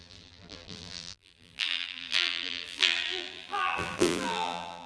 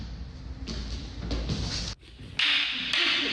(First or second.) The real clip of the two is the second